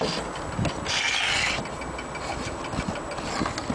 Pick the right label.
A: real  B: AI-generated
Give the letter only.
A